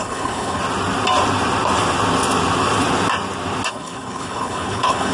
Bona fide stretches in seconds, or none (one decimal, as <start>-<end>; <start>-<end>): 0.6-3.7